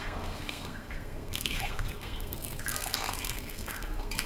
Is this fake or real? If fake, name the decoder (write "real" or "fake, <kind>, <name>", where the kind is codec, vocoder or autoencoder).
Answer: fake, codec, SNAC